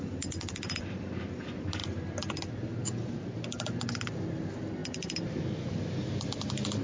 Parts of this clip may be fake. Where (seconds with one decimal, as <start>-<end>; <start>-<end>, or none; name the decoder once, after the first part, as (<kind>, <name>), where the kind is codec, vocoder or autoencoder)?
none